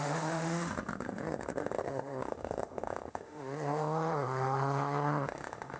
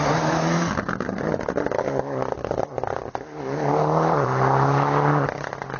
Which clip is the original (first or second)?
second